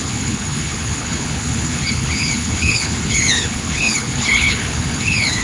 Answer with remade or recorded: remade